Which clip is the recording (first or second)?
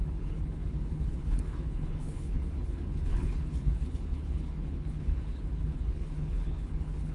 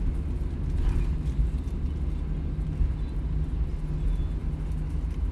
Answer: second